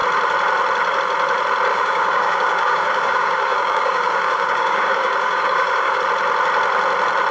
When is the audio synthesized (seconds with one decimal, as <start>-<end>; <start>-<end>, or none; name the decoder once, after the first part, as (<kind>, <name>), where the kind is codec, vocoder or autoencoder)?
1.7-6.0 (codec, DAC)